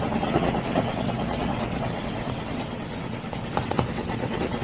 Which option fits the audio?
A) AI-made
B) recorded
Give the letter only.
A